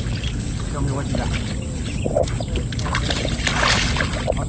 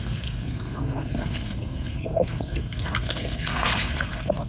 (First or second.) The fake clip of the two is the second